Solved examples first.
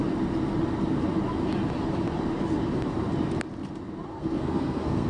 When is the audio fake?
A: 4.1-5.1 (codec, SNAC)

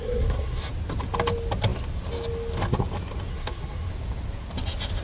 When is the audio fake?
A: 0.0-0.7 (codec, SNAC); 3.3-3.9

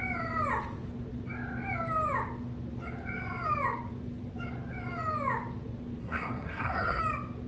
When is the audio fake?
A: 6.0-7.0 (codec, SNAC)

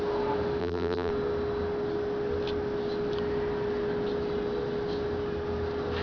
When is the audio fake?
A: 0.6-1.1 (vocoder, BigVGAN v2)